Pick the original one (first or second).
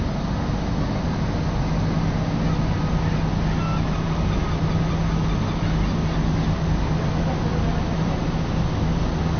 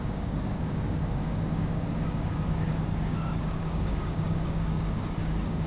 first